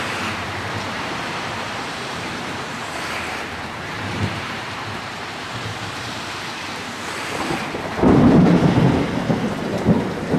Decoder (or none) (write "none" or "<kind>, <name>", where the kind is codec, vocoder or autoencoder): vocoder, BigVGAN v2